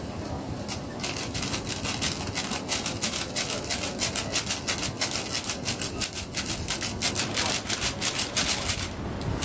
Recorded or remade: recorded